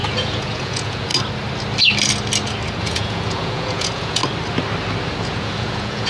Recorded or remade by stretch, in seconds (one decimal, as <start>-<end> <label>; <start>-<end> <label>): 0.0-1.1 remade; 1.1-2.8 recorded; 2.8-4.2 remade; 4.2-5.2 recorded; 5.2-6.1 remade